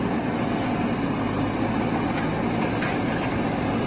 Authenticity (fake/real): real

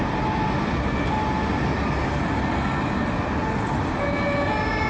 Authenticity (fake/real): real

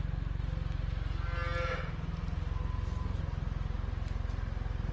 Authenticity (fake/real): real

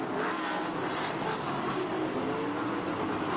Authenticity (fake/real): real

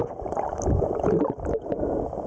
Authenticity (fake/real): fake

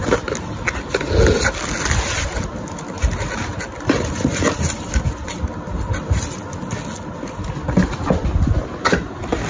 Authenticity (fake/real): real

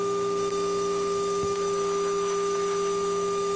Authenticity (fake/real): fake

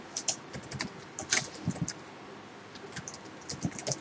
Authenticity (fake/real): real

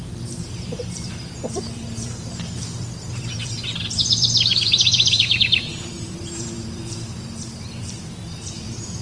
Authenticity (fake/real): fake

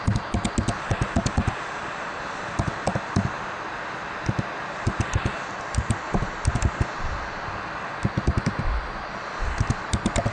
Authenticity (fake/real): real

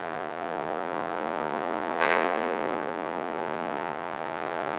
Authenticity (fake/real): fake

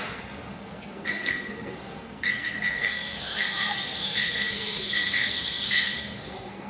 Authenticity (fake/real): fake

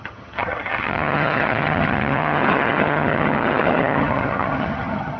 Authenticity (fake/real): fake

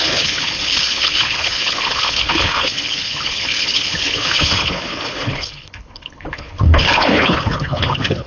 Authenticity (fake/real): fake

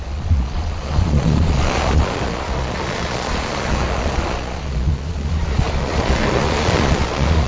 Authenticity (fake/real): fake